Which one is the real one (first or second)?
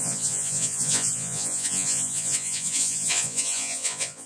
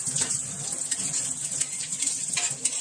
second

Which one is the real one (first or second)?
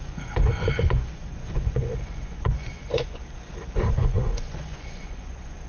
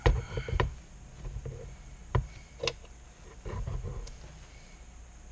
second